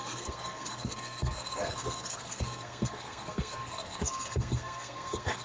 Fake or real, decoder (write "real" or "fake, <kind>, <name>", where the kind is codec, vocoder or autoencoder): fake, codec, SNAC